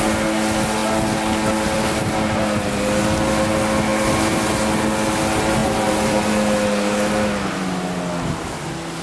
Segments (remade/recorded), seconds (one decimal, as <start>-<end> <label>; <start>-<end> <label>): 0.0-5.6 recorded; 5.6-6.2 remade; 6.2-9.0 recorded